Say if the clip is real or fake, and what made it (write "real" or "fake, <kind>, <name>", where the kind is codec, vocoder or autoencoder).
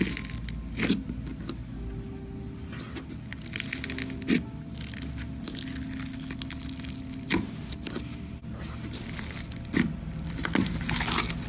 real